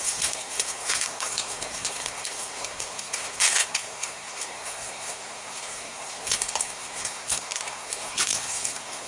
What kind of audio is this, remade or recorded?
remade